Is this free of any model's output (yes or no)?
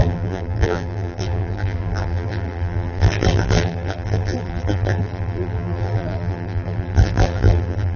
no